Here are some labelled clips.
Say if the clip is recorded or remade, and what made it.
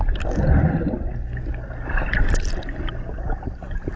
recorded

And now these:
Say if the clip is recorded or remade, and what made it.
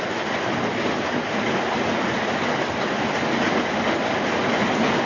recorded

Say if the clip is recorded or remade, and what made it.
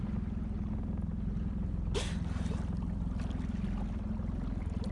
recorded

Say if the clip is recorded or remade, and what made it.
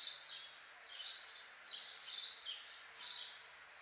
recorded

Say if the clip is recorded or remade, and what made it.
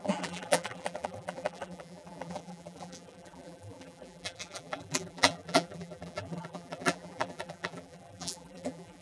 remade, vocoder, BigVGAN v2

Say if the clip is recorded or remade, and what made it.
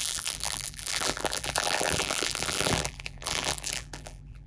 remade, vocoder, BigVGAN v2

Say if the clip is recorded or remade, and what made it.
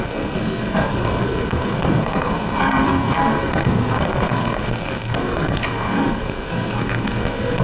remade, codec, SNAC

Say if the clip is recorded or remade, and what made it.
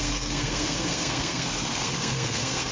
remade, codec, SNAC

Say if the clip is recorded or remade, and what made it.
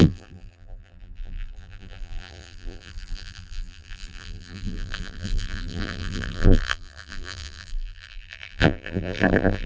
remade, vocoder, BigVGAN v2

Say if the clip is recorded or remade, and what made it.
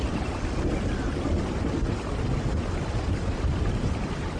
recorded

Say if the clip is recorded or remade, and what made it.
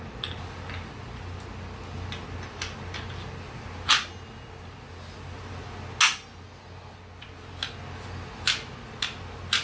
recorded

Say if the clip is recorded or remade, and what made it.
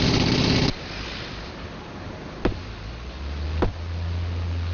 recorded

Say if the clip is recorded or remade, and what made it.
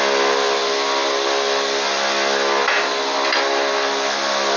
recorded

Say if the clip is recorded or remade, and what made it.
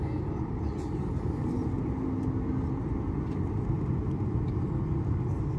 recorded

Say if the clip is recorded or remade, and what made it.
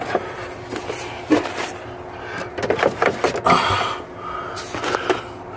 recorded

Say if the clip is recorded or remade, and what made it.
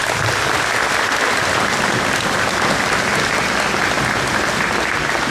recorded